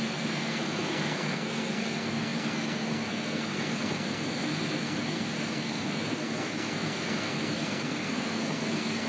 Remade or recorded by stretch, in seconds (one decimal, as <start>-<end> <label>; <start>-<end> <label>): 0.0-9.1 remade